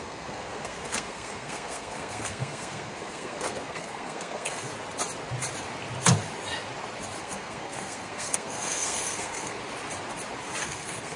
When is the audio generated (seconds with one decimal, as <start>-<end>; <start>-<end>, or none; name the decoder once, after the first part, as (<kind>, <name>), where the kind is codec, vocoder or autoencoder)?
0.0-4.7 (codec, SNAC); 7.2-9.6; 10.6-11.2